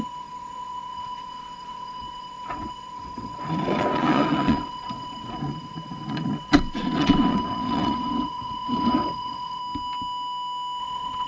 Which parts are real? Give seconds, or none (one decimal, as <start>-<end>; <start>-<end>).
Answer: 9.6-10.8